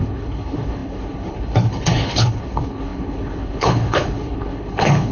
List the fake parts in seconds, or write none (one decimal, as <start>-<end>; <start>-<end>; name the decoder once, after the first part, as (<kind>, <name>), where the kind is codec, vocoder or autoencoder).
0.0-5.1 (codec, HILCodec)